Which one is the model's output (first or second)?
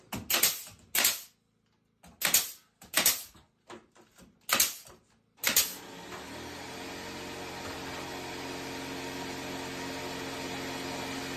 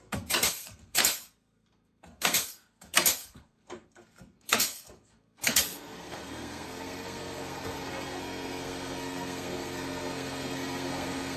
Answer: second